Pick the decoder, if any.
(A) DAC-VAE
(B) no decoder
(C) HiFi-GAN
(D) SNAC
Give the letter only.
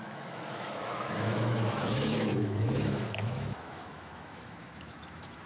A